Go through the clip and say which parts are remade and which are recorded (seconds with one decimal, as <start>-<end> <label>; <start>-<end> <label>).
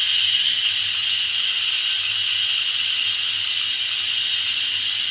0.0-5.1 recorded